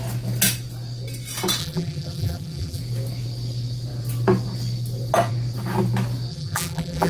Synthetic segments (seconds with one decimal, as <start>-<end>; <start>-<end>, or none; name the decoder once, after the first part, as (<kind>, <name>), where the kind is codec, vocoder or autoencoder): 1.6-2.8 (vocoder, BigVGAN v2); 6.3-7.1